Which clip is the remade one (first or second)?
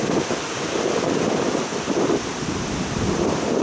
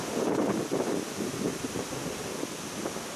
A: first